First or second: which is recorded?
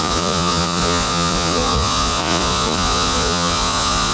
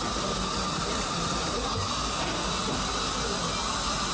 second